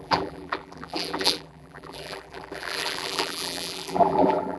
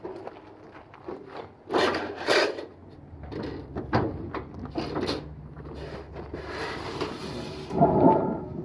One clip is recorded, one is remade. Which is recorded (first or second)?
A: second